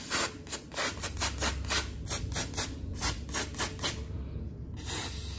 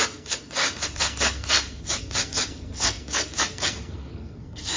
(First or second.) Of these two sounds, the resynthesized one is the second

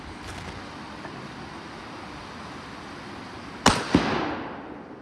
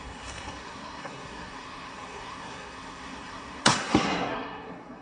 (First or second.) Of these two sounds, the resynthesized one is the second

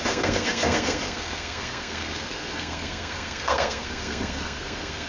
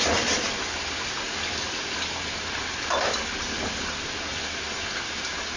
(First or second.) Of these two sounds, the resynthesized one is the first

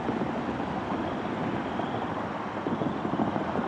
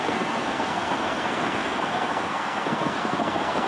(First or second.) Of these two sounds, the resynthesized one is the second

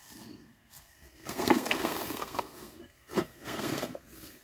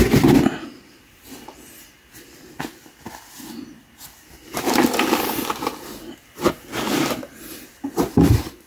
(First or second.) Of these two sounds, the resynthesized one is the first